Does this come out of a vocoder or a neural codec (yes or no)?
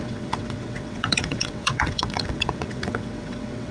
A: yes